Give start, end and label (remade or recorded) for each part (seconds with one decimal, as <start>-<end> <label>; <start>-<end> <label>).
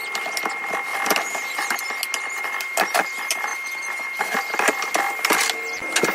0.0-0.9 recorded; 0.9-1.8 remade; 1.8-6.1 recorded